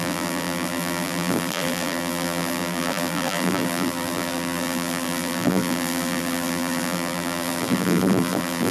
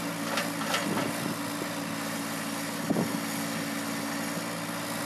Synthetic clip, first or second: first